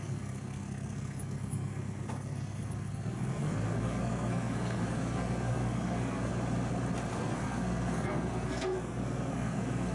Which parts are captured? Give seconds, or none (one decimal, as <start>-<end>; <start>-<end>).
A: 6.3-7.1